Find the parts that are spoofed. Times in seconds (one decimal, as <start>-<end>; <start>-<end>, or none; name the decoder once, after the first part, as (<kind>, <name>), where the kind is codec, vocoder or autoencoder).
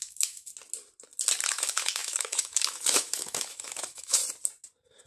0.0-0.5 (autoencoder, DAC-VAE); 1.5-4.2